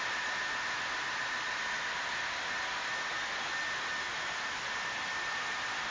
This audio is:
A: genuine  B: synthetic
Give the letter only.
A